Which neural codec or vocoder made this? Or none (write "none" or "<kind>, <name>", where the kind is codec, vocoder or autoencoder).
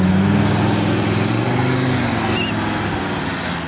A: none